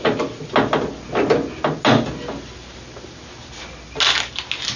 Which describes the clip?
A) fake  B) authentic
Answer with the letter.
B